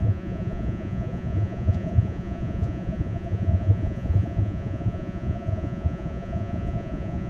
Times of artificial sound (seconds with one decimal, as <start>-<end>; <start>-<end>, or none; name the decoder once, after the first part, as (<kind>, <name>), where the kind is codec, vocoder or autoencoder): 0.0-7.3 (vocoder, Vocos)